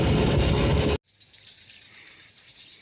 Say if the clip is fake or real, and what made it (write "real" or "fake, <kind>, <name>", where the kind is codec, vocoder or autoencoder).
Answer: real